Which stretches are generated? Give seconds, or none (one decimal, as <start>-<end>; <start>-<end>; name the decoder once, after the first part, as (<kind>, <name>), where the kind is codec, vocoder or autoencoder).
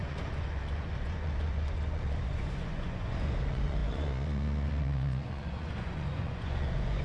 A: 0.0-7.0 (vocoder, Vocos)